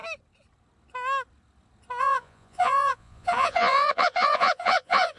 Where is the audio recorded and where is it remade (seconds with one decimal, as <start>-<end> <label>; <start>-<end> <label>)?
0.0-2.0 recorded; 2.0-5.2 remade